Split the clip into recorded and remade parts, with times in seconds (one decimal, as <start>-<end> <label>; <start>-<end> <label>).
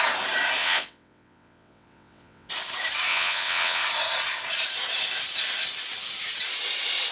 0.0-0.6 recorded; 0.6-2.5 remade; 2.5-3.1 recorded; 3.1-3.8 remade; 3.8-7.1 recorded